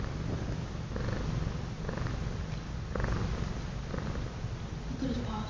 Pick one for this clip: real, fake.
real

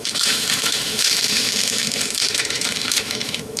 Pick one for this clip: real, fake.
fake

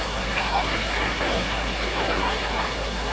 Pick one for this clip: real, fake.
fake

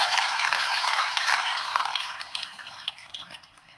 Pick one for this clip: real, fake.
fake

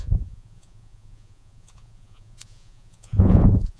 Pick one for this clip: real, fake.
fake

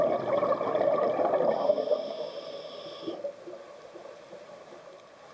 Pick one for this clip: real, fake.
real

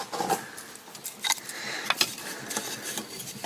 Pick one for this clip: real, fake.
real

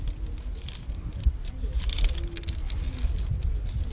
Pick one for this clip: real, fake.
real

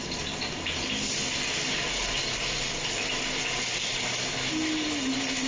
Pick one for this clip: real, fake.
real